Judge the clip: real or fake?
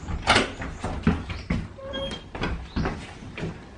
real